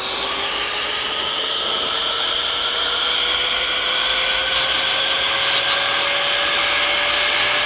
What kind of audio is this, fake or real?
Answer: real